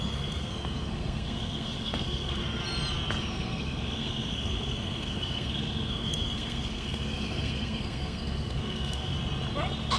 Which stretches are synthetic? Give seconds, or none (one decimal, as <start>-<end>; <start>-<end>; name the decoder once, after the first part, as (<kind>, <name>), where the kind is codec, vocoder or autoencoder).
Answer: 0.0-2.6 (codec, SNAC); 3.3-9.1